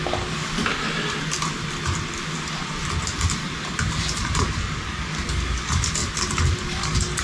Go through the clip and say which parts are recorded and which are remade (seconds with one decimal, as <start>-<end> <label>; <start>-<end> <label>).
0.0-0.7 remade; 0.7-4.2 recorded; 4.2-6.0 remade; 6.0-6.6 recorded; 6.6-7.2 remade